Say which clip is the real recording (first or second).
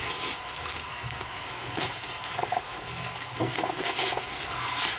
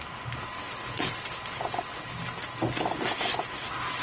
second